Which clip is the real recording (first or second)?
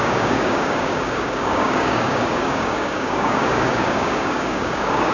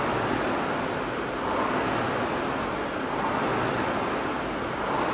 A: second